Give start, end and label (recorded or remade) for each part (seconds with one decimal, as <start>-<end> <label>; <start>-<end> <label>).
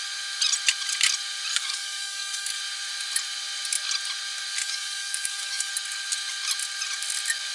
0.0-1.5 recorded; 1.5-2.6 remade; 2.6-4.6 recorded; 4.6-5.7 remade; 5.7-7.5 recorded